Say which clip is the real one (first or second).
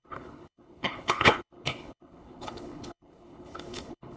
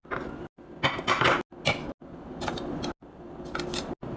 second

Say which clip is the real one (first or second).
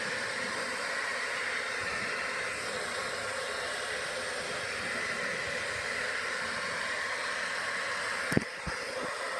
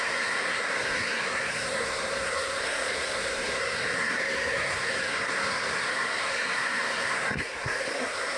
first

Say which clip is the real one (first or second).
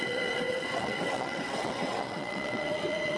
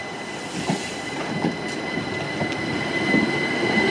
second